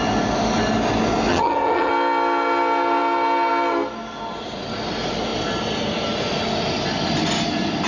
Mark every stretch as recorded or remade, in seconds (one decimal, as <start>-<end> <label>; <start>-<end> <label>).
0.0-1.3 recorded; 1.3-1.9 remade; 1.9-7.9 recorded